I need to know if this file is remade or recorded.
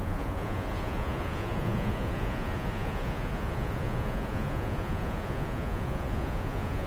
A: remade